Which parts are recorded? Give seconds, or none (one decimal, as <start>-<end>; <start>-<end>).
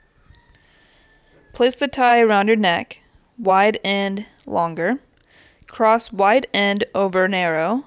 0.0-7.9